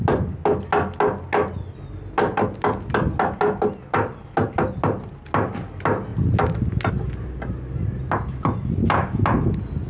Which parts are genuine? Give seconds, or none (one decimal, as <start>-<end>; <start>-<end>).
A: 0.0-9.9